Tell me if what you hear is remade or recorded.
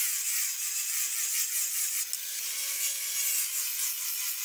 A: recorded